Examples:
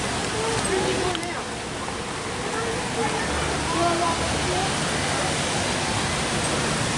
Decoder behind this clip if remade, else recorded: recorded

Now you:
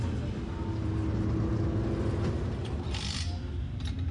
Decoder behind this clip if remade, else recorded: recorded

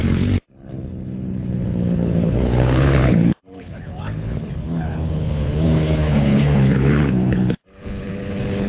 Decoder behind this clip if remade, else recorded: remade, codec, HILCodec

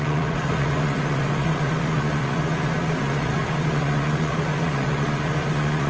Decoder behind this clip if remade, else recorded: remade, vocoder, Vocos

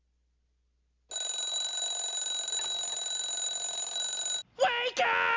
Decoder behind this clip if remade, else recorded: recorded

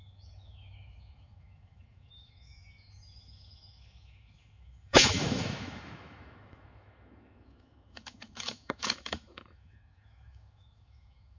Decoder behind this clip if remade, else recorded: remade, autoencoder, DAC-VAE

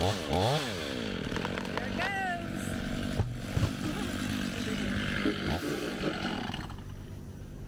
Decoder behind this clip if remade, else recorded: recorded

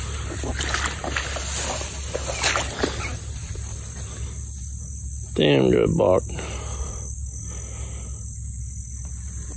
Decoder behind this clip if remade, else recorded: recorded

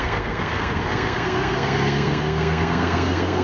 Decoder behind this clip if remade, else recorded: remade, codec, SNAC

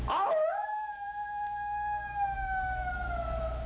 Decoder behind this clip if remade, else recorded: remade, autoencoder, DAC-VAE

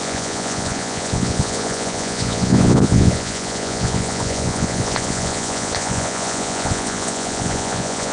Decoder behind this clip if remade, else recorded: remade, vocoder, Vocos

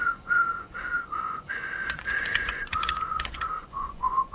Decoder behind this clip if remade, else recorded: remade, vocoder, Vocos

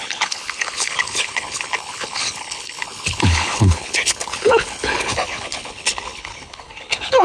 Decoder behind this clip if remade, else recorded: remade, codec, HILCodec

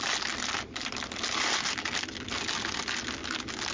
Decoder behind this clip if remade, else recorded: recorded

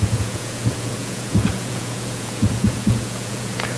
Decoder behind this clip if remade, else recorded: remade, vocoder, Vocos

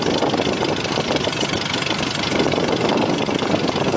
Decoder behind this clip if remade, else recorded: recorded